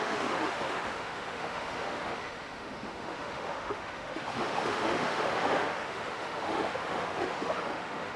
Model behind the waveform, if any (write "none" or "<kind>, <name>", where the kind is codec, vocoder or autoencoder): autoencoder, DAC-VAE